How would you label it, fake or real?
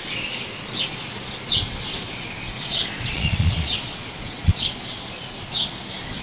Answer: fake